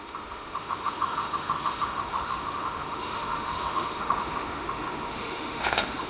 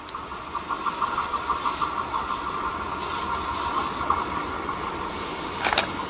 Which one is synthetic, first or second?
first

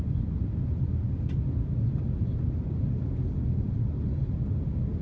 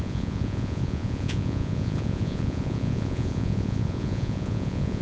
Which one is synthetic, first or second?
second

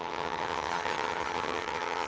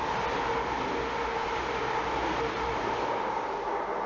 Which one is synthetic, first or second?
first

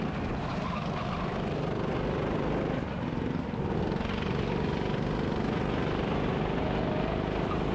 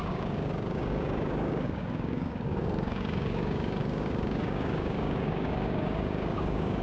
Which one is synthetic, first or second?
second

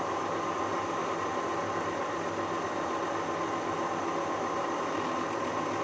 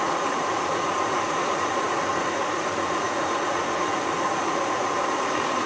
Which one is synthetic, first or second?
second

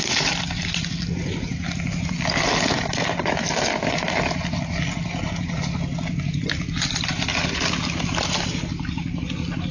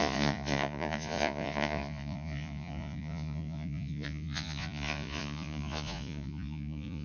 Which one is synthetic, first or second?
second